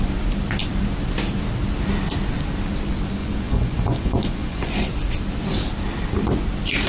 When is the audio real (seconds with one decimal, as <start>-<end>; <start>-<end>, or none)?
0.0-3.2; 4.9-6.9